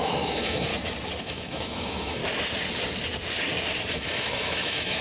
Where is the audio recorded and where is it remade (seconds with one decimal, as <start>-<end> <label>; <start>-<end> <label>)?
0.0-0.7 remade; 0.7-1.2 recorded; 1.2-2.2 remade; 2.2-3.9 recorded; 3.9-5.0 remade